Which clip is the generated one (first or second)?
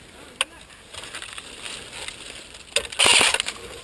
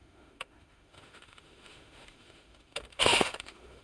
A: second